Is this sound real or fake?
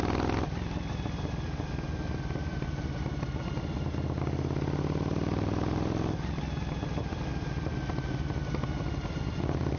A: real